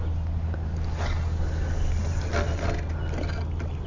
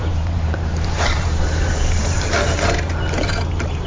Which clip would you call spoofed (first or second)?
second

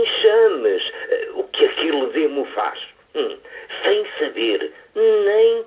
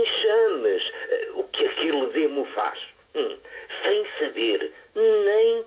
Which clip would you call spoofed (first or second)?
second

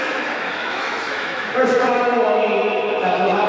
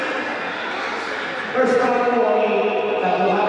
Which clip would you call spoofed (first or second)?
first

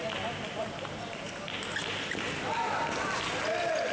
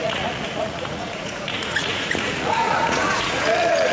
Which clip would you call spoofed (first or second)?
second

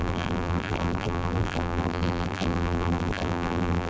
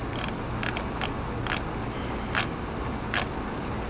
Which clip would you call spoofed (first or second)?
first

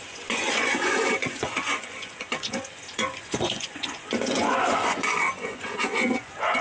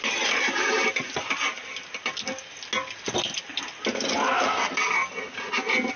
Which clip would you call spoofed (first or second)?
first